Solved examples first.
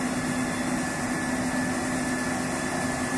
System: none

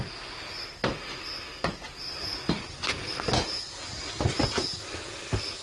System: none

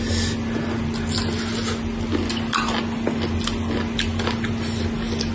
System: none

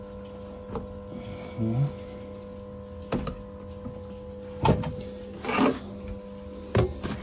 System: none